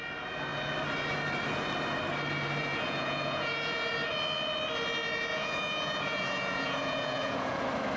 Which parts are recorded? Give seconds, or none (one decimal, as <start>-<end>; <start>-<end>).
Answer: 0.0-2.6; 3.9-5.3; 7.6-8.0